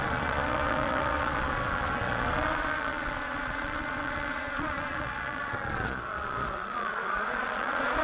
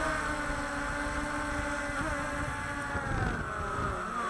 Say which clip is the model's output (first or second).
first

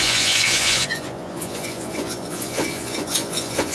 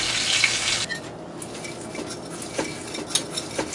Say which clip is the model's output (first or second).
first